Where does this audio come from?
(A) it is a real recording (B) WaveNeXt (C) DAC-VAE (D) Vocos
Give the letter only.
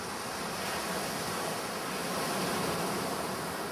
A